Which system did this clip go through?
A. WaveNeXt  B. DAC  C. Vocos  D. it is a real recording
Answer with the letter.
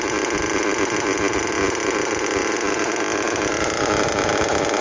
D